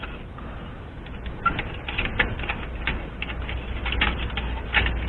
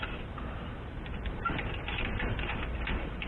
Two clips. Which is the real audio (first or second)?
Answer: first